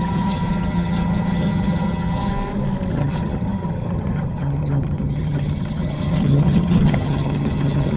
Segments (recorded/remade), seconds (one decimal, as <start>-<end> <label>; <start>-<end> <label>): 0.0-2.3 remade; 2.3-2.9 recorded; 2.9-8.0 remade